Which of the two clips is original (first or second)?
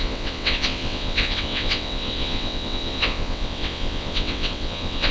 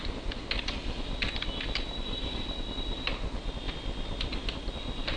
second